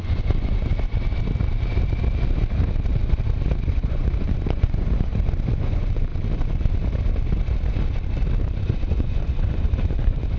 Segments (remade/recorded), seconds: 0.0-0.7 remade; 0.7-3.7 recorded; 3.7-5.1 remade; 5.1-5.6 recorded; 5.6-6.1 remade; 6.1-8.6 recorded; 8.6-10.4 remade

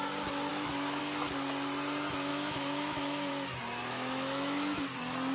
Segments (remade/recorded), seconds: 0.0-0.5 recorded; 0.5-1.0 remade; 1.0-2.3 recorded; 2.3-3.3 remade; 3.3-3.8 recorded; 3.8-4.8 remade; 4.8-5.3 recorded

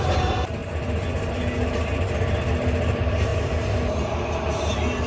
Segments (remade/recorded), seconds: 0.0-5.1 recorded

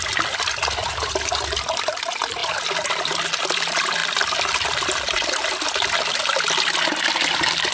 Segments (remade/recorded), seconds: 0.0-0.8 recorded; 0.8-1.7 remade; 1.7-7.7 recorded

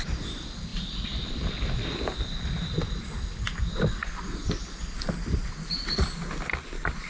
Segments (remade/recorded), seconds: 0.0-0.7 recorded; 0.7-3.6 remade; 3.6-7.1 recorded

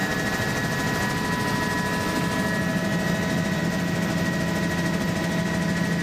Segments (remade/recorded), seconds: 0.0-6.0 recorded

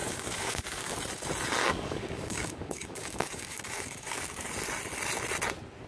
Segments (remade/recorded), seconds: 0.0-1.0 remade; 1.0-1.6 recorded; 1.6-4.5 remade; 4.5-5.9 recorded